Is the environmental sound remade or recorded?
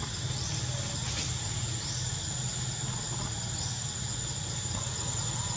recorded